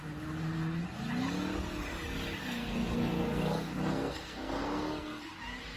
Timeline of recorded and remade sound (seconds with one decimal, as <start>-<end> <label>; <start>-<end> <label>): 0.0-2.4 recorded; 2.4-5.3 remade; 5.3-5.8 recorded